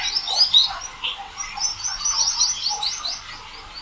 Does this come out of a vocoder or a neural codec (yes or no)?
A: no